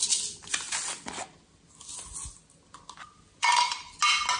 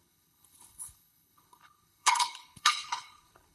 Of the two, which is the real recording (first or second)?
first